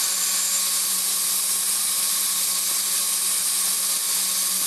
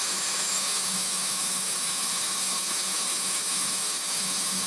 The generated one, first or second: second